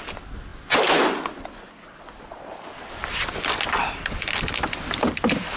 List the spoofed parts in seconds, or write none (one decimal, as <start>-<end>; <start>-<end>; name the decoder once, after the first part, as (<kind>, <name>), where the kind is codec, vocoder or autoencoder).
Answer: none